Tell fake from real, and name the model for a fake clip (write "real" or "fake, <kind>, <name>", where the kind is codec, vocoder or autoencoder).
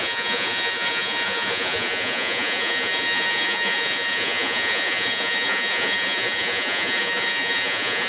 fake, vocoder, Vocos